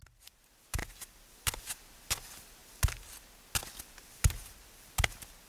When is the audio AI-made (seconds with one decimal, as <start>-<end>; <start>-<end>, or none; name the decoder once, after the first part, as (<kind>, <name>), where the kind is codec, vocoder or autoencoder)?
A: none